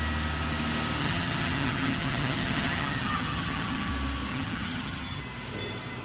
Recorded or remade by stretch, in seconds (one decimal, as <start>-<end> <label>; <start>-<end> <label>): 0.0-1.0 recorded; 1.0-3.9 remade; 3.9-4.3 recorded; 4.3-5.2 remade; 5.2-6.0 recorded